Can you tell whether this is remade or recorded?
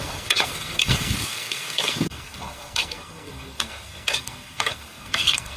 remade